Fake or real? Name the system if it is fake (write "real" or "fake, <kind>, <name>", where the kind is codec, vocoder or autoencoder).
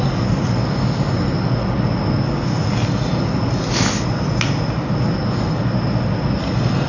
real